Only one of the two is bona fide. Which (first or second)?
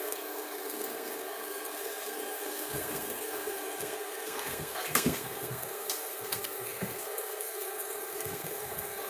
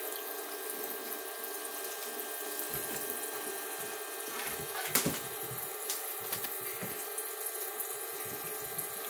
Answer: second